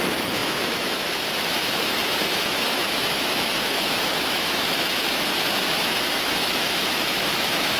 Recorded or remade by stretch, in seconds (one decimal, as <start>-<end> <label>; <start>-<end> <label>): 0.0-7.8 remade